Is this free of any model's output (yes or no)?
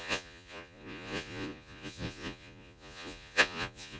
no